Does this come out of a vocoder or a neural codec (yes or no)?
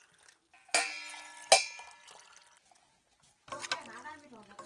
no